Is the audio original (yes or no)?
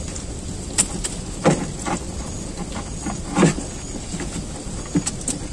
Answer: yes